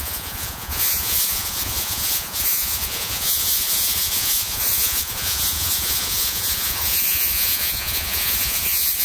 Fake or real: fake